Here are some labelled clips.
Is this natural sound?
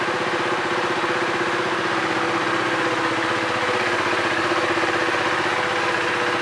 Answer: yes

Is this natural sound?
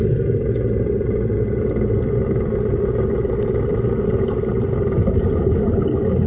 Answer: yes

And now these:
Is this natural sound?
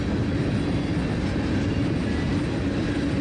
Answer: yes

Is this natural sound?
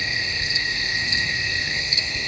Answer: no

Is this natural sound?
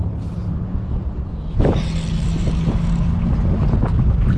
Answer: yes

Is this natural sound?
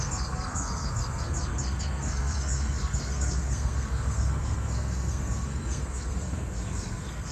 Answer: no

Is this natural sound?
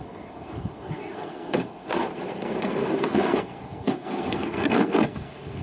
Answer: no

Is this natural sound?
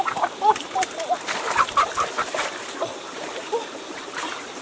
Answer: yes